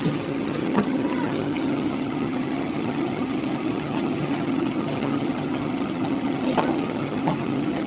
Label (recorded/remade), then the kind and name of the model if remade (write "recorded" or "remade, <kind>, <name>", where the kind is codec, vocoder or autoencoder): remade, vocoder, HiFi-GAN